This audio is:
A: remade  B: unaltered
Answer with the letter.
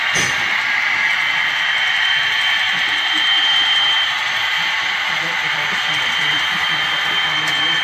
A